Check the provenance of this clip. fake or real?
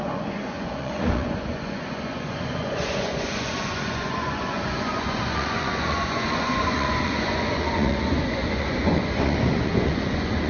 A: fake